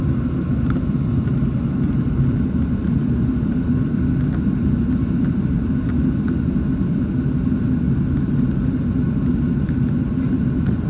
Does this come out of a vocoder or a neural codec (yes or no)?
no